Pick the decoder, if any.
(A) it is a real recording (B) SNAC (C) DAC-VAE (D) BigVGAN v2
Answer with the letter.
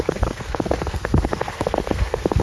B